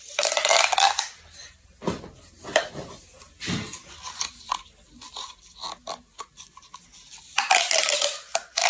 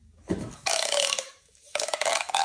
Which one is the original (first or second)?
first